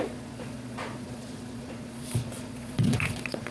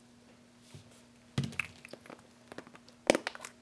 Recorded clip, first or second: second